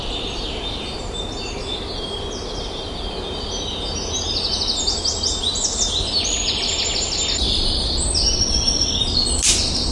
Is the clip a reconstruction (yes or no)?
no